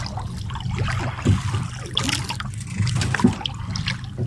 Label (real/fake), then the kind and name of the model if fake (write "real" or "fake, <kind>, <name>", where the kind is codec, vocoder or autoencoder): real